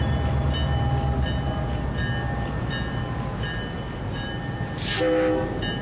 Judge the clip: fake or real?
real